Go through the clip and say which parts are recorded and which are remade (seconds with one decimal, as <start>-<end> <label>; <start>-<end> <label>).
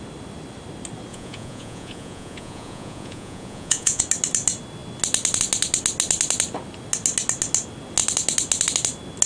0.0-1.1 recorded; 1.1-4.0 remade; 4.0-9.3 recorded